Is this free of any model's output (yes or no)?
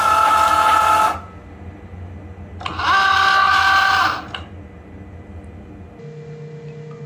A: yes